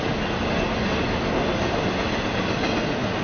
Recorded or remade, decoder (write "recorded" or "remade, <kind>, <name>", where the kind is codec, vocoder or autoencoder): recorded